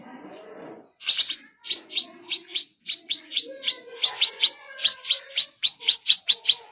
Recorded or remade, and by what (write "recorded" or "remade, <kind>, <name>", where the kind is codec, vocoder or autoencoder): remade, vocoder, Vocos